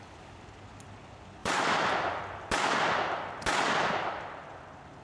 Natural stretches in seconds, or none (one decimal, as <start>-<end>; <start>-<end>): 0.0-1.4; 2.2-5.0